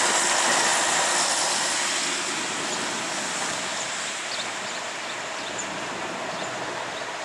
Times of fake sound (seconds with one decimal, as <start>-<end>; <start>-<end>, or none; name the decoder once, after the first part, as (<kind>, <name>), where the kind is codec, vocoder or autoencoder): 0.7-1.4 (vocoder, BigVGAN v2); 3.7-5.9